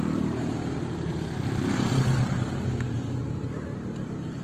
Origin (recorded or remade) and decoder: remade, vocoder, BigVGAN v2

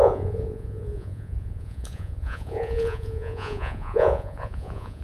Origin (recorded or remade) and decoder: remade, vocoder, Vocos